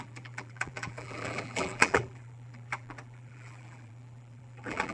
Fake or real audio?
fake